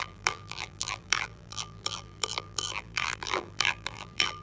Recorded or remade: remade